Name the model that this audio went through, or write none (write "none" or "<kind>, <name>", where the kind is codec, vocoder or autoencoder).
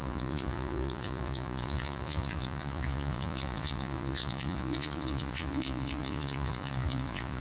vocoder, Vocos